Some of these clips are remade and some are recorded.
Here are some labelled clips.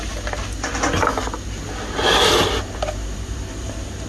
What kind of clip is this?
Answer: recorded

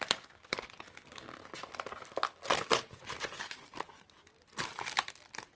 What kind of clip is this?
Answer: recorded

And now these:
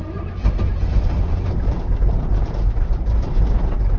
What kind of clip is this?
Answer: remade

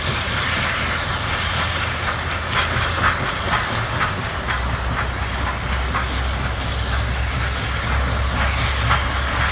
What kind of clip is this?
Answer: recorded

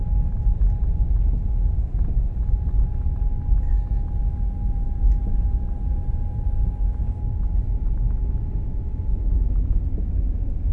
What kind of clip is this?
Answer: recorded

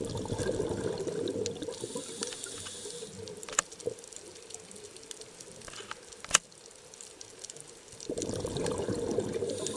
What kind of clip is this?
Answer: recorded